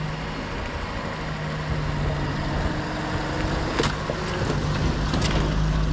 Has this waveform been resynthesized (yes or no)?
no